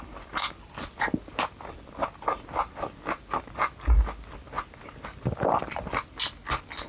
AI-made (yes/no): no